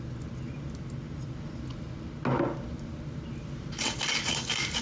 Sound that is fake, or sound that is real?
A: real